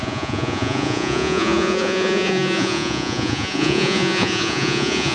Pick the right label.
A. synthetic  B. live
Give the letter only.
A